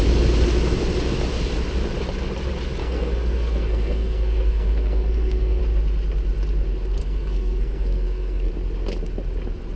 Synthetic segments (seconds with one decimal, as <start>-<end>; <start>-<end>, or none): 2.8-5.6; 7.0-8.5